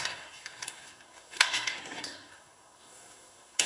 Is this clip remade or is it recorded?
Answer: remade